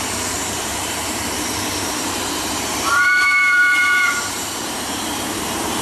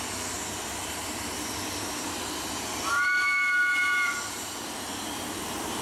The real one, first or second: second